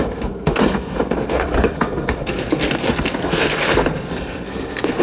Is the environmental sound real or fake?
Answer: fake